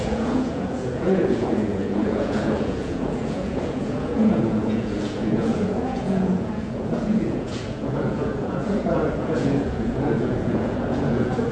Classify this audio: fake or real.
fake